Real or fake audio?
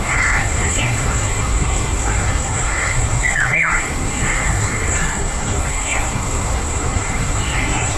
fake